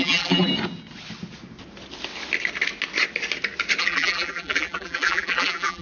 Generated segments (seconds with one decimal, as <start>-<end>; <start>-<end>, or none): 0.0-0.5; 3.8-5.8